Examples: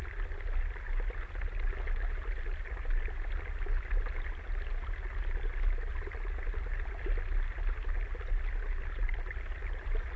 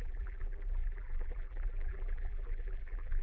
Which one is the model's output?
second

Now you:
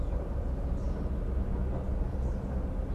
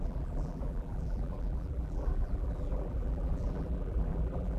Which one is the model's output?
second